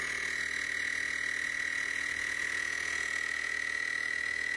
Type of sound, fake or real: fake